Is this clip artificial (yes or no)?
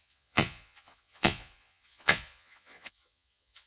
yes